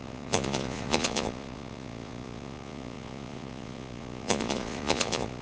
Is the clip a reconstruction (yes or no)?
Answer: yes